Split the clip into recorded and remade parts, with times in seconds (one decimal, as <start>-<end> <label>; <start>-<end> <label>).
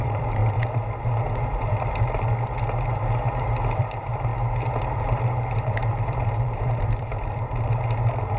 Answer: 0.0-0.4 remade; 0.4-3.8 recorded; 3.8-4.3 remade; 4.3-4.8 recorded; 4.8-8.4 remade